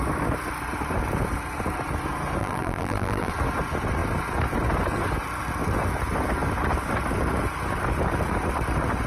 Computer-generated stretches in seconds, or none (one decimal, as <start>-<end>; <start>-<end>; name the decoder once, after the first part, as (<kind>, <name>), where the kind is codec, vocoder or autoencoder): 2.4-3.3 (vocoder, BigVGAN v2)